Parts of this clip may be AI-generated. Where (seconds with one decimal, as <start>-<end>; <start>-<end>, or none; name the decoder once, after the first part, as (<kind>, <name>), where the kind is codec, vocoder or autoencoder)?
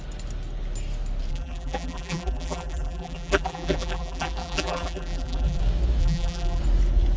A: 1.3-5.6 (vocoder, BigVGAN v2); 6.0-6.6